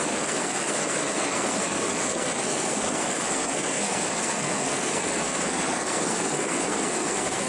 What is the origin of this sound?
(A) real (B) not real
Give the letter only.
B